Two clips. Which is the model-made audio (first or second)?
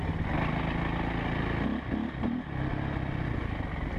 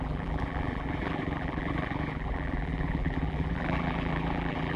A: second